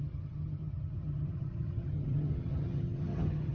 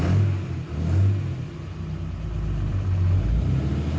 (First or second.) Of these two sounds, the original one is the second